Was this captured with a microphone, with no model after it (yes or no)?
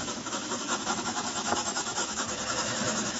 no